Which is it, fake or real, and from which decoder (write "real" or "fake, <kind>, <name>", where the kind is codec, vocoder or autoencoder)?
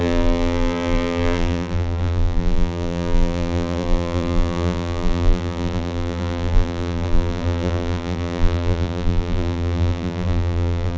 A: fake, vocoder, BigVGAN v2